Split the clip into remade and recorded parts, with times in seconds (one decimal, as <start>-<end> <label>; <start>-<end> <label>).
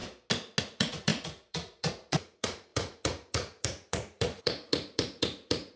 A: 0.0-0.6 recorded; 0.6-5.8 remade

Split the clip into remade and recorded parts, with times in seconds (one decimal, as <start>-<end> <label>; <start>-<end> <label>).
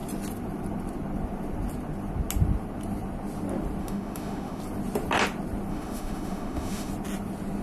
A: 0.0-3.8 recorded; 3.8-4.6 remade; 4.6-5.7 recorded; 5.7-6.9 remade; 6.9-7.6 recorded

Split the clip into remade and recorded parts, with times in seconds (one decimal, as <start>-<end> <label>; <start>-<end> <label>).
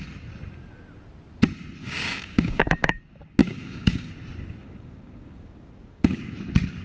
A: 0.0-1.8 recorded; 1.8-3.0 remade; 3.0-3.4 recorded; 3.4-4.1 remade; 4.1-4.6 recorded; 4.6-6.2 remade; 6.2-6.8 recorded